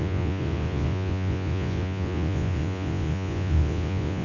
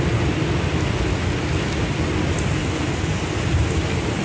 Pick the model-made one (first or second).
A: first